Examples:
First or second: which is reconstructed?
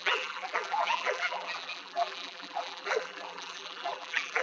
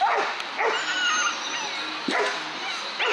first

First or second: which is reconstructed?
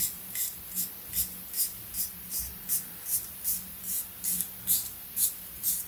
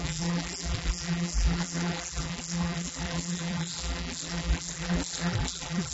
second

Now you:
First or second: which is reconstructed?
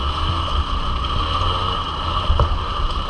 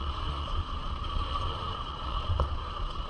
second